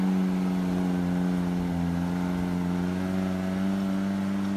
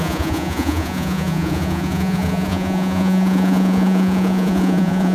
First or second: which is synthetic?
second